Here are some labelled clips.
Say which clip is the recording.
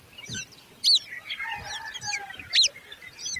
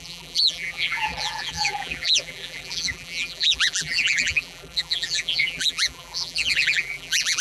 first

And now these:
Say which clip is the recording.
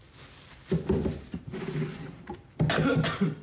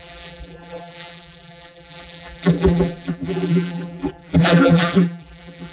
first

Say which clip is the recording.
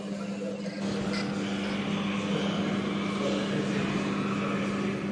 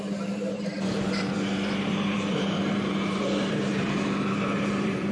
first